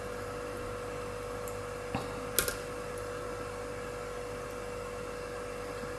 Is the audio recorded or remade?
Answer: recorded